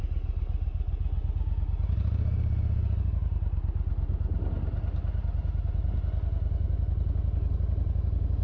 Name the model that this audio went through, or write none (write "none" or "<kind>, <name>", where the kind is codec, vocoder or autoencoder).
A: none